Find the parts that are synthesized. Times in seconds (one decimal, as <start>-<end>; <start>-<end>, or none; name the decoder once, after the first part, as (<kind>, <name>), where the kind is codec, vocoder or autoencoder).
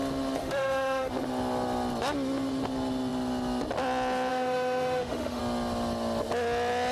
0.4-1.1 (autoencoder, DAC-VAE); 4.3-5.4